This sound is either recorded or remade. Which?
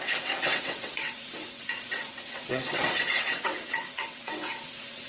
remade